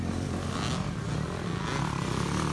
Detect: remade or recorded recorded